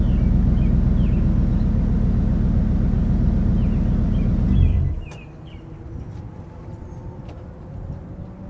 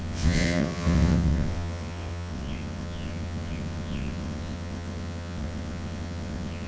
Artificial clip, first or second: second